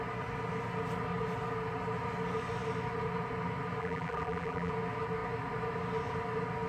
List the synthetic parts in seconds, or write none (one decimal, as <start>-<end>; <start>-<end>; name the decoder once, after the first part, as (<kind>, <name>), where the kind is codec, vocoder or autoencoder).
3.8-4.7 (vocoder, BigVGAN v2)